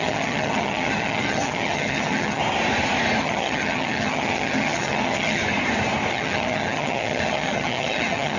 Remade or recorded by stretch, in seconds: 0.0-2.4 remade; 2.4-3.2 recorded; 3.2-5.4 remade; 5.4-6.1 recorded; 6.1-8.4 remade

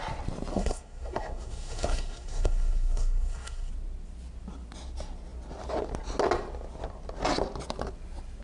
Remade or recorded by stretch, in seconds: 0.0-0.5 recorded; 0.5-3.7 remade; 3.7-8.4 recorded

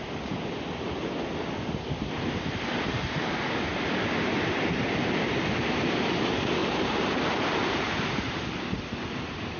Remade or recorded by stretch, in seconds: 0.0-6.6 recorded; 6.6-8.8 remade; 8.8-9.6 recorded

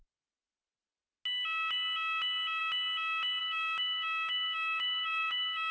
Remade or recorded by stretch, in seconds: 0.0-3.4 recorded; 3.4-5.7 remade